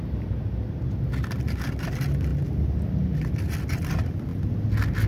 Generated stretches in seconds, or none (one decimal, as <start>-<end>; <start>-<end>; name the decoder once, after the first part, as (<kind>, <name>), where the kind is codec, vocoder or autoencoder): none